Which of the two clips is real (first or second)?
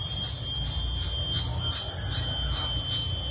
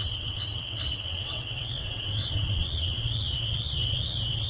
first